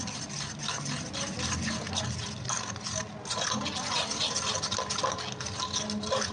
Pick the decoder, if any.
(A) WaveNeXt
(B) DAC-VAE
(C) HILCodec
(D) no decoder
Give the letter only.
D